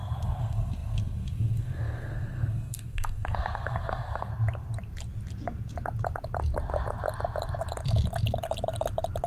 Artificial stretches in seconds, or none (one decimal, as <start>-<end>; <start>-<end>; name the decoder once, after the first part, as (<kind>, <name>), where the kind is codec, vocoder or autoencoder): 0.0-4.3 (codec, SNAC)